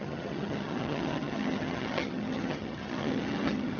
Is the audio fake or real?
fake